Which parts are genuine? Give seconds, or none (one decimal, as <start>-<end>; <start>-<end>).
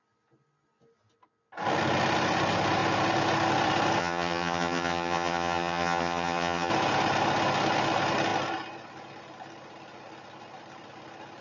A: 0.0-4.0; 6.7-11.4